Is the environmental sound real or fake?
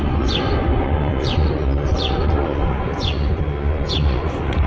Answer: fake